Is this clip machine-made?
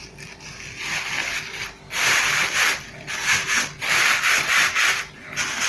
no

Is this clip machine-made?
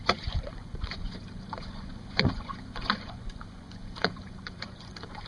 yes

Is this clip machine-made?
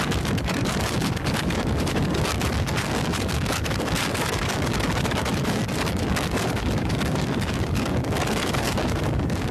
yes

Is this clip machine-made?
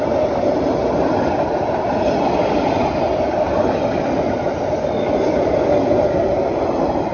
no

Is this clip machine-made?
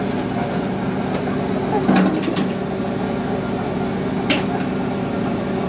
no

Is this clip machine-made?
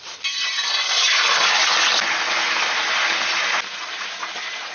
no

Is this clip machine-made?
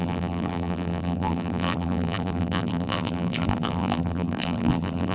yes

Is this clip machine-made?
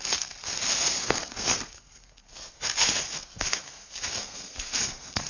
yes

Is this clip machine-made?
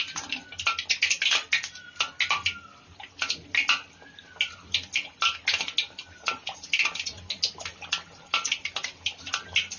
no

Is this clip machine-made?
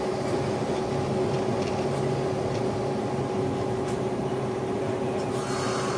no